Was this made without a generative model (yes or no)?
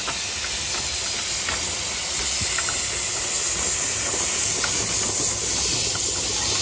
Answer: yes